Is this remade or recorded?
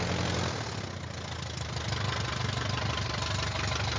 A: recorded